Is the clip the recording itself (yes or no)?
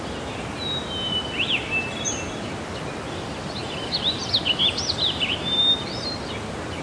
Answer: yes